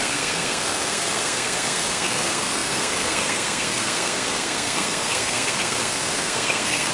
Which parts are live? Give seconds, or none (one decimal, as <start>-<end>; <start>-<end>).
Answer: none